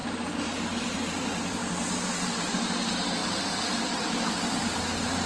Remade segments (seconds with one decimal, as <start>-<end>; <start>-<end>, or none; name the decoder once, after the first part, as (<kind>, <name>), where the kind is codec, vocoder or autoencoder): 0.8-1.6 (vocoder, BigVGAN v2); 2.4-5.3